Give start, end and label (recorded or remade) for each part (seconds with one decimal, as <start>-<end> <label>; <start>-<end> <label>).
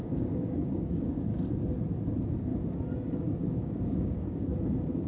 0.0-1.3 remade; 1.3-3.1 recorded; 3.1-4.5 remade; 4.5-5.1 recorded